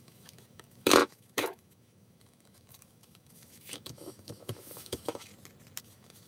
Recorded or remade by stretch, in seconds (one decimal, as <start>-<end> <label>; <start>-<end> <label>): 0.0-5.3 remade; 5.3-5.8 recorded; 5.8-6.3 remade